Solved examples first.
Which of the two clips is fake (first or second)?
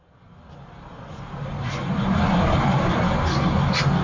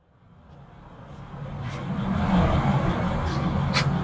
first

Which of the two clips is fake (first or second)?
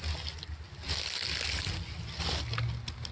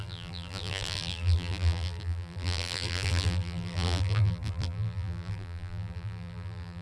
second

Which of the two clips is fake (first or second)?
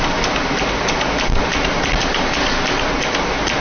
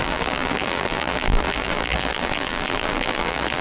second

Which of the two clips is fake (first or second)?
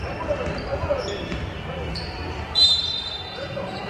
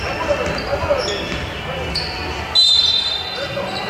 first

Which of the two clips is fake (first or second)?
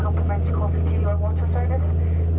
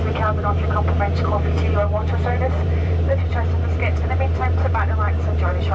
second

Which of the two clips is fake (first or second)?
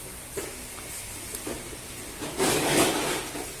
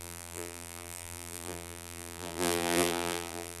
second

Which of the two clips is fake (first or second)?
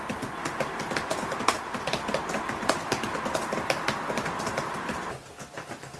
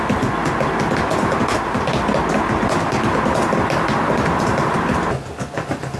first